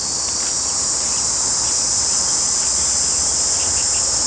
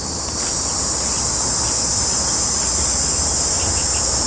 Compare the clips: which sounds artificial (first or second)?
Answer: first